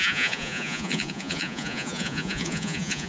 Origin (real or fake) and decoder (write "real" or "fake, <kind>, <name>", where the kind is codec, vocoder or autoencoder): fake, vocoder, Vocos